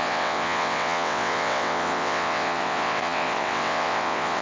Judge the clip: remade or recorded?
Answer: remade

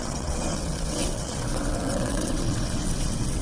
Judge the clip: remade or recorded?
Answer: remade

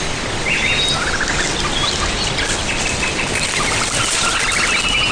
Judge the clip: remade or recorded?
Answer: recorded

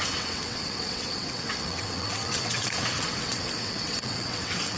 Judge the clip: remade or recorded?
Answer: remade